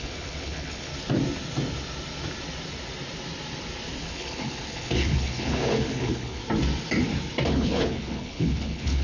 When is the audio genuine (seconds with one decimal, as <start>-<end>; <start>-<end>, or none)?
0.9-4.0; 6.4-7.5

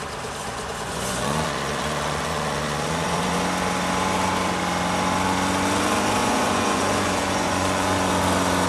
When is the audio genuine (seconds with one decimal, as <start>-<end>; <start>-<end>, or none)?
0.0-0.4; 3.3-6.2; 8.1-8.7

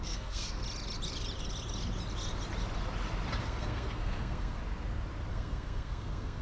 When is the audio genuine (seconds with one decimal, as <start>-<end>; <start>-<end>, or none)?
0.6-3.4; 4.6-5.3

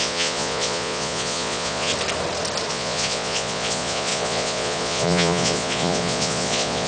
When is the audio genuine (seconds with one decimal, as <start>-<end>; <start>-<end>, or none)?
1.9-2.7

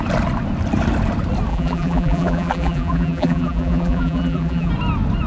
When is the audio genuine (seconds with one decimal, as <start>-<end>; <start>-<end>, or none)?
0.0-1.5; 4.7-5.3

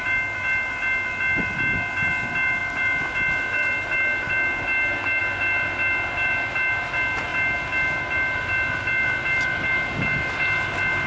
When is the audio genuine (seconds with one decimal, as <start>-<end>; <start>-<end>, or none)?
0.0-11.1

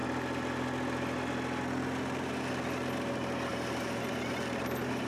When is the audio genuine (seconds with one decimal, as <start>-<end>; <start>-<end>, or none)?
0.0-3.5; 4.6-5.1

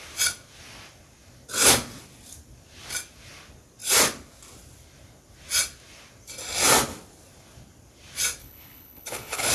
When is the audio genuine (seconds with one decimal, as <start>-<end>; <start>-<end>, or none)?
0.0-8.4